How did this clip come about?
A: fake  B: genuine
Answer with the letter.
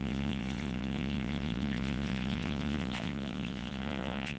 A